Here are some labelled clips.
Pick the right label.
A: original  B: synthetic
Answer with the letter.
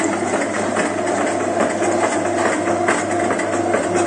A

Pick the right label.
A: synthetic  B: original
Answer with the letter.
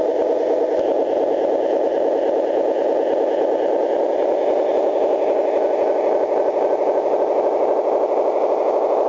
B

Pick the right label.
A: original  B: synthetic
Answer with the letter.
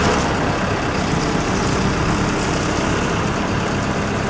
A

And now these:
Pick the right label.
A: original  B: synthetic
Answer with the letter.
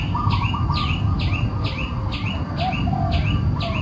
A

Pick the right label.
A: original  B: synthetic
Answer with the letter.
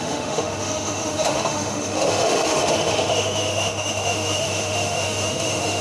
B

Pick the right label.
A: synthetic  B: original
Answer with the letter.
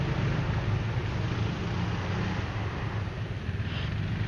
B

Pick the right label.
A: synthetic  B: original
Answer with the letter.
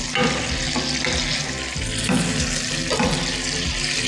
B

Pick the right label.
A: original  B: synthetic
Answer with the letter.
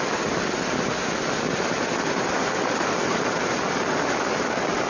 A